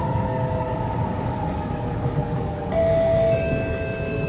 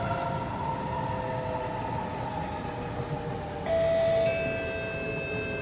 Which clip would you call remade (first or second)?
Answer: first